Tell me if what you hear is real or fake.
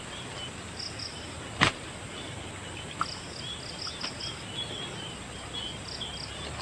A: real